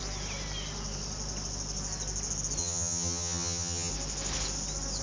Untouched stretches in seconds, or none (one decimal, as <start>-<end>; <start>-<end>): 0.0-2.6; 3.9-5.0